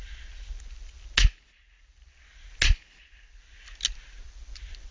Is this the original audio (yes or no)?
yes